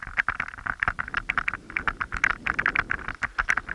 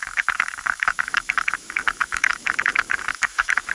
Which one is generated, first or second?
second